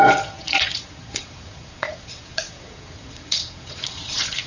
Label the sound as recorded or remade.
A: remade